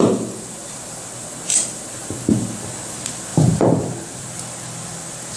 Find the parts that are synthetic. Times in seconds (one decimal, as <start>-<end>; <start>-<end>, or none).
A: 0.0-5.4